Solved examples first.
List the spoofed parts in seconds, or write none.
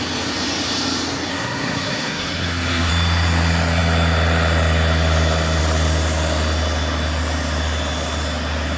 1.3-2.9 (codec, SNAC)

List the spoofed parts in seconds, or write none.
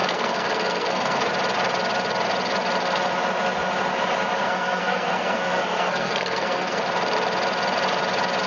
0.0-1.3 (codec, SNAC); 4.4-6.8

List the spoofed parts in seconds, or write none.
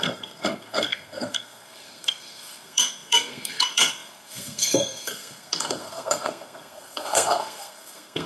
0.0-8.3 (codec, SNAC)